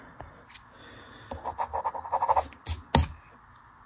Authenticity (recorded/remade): recorded